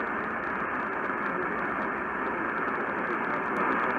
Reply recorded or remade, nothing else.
recorded